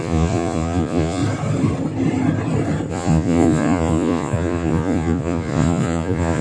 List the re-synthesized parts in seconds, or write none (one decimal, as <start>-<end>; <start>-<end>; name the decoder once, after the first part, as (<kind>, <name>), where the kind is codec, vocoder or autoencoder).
0.0-1.2 (vocoder, Vocos); 2.9-6.4